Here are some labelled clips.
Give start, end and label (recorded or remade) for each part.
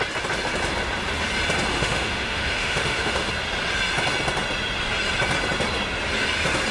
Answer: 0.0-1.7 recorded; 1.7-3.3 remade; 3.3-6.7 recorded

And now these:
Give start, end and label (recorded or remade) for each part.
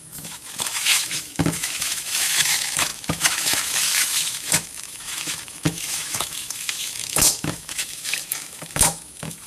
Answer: 0.0-9.5 remade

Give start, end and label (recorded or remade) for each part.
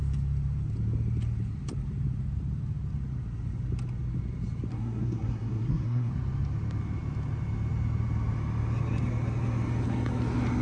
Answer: 0.0-4.7 recorded; 4.7-6.1 remade; 6.1-10.6 recorded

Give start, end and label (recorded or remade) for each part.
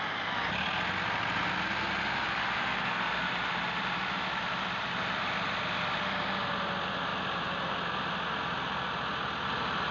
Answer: 0.0-7.1 recorded; 7.1-8.1 remade; 8.1-9.9 recorded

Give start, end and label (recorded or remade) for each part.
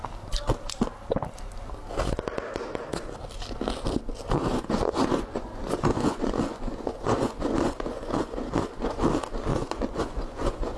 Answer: 0.0-4.5 recorded; 4.5-9.0 remade; 9.0-9.5 recorded; 9.5-10.8 remade